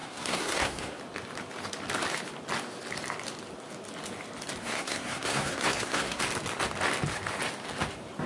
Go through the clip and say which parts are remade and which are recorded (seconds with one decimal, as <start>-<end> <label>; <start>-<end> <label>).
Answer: 0.0-1.0 remade; 1.0-4.6 recorded; 4.6-6.2 remade; 6.2-8.3 recorded

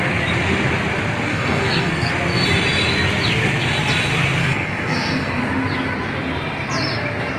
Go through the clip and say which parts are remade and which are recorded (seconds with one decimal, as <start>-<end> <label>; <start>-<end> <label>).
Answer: 0.0-1.3 recorded; 1.3-2.1 remade; 2.1-4.4 recorded; 4.4-5.4 remade; 5.4-7.4 recorded

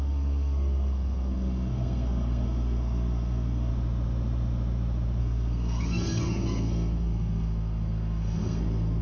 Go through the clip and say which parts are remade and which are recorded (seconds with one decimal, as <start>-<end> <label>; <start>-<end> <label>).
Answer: 0.0-3.7 remade; 3.7-5.2 recorded; 5.2-9.0 remade

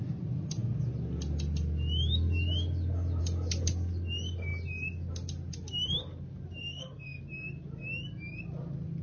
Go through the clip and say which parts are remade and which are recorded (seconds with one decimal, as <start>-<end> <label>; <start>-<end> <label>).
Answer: 0.0-6.6 recorded; 6.6-7.2 remade; 7.2-9.0 recorded

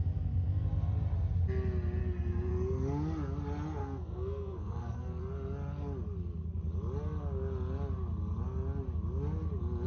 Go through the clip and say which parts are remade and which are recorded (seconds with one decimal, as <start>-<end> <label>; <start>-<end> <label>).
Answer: 0.0-2.0 recorded; 2.0-2.5 remade; 2.5-3.8 recorded; 3.8-5.2 remade; 5.2-9.9 recorded